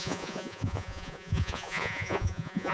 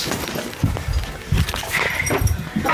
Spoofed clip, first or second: first